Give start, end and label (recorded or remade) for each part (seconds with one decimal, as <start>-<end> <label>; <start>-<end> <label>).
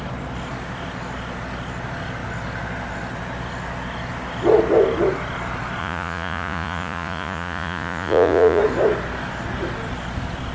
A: 0.0-5.8 recorded; 5.8-8.6 remade; 8.6-10.5 recorded